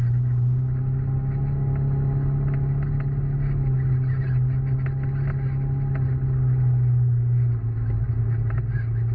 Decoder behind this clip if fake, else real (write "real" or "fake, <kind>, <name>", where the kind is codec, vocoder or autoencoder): real